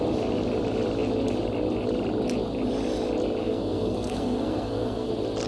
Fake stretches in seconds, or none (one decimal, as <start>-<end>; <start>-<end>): 3.4-5.1